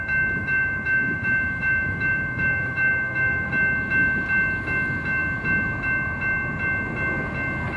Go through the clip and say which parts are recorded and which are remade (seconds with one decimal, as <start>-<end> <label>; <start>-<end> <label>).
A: 0.0-0.4 recorded; 0.4-3.5 remade; 3.5-7.8 recorded